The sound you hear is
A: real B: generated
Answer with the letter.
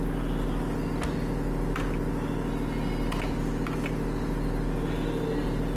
A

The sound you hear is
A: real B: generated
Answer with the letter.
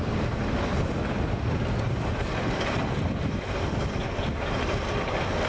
A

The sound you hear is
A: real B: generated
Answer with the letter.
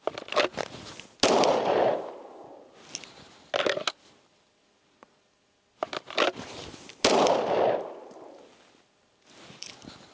A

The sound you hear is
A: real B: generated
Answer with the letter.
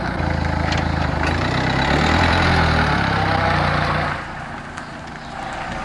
B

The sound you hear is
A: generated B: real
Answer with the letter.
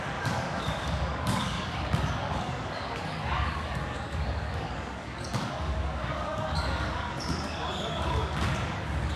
A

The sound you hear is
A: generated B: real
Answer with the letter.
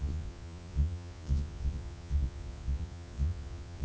A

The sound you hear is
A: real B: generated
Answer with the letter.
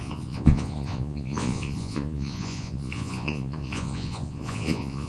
B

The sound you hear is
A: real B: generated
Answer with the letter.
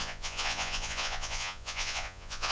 B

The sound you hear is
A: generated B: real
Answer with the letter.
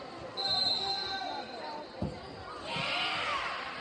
B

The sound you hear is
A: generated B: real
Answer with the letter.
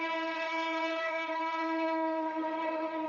A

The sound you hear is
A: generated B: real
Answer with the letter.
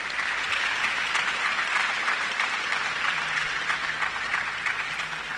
A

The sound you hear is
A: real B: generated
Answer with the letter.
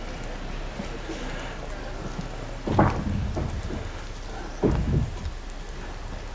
A